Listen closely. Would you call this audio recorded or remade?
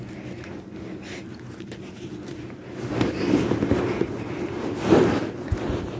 recorded